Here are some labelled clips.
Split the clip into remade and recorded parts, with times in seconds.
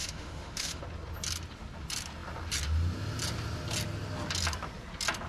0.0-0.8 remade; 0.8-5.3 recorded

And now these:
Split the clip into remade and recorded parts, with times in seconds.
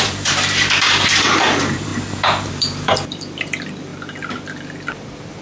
0.0-1.9 remade; 1.9-2.5 recorded; 2.5-3.9 remade; 3.9-5.4 recorded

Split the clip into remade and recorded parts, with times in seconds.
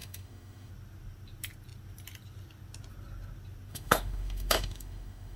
0.0-0.7 remade; 0.7-3.7 recorded; 3.7-5.4 remade